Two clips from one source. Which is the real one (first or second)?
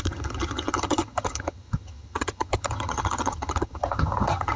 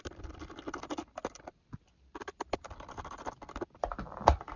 second